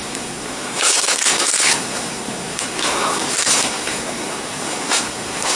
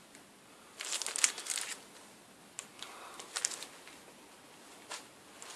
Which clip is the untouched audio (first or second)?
second